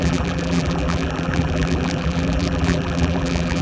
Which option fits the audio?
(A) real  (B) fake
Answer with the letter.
B